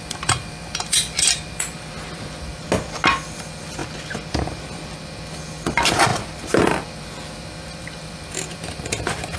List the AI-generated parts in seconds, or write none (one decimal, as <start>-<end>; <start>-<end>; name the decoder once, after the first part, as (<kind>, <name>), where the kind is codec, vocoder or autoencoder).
0.0-2.6 (vocoder, BigVGAN v2); 3.1-3.8; 4.3-9.4